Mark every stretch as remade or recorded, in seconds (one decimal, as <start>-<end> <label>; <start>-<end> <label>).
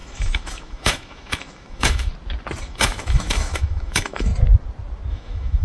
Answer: 0.0-2.1 remade; 2.1-2.6 recorded; 2.6-4.3 remade; 4.3-5.1 recorded; 5.1-5.6 remade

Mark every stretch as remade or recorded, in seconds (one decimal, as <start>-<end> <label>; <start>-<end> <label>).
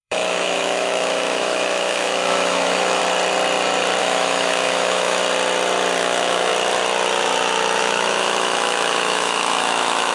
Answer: 0.0-3.0 remade; 3.0-4.0 recorded; 4.0-5.2 remade; 5.2-6.0 recorded; 6.0-6.5 remade; 6.5-7.8 recorded; 7.8-10.1 remade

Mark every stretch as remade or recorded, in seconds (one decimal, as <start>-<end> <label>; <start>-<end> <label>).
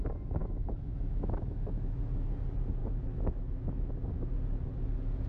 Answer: 0.0-0.4 recorded; 0.4-2.0 remade; 2.0-2.8 recorded; 2.8-3.9 remade; 3.9-5.3 recorded